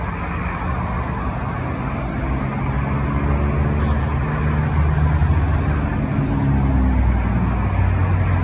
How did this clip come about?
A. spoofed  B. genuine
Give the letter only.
B